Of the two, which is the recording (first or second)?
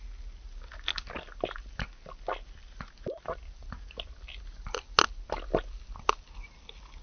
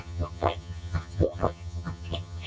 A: first